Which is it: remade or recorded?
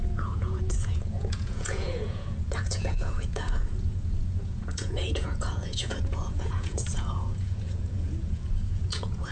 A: remade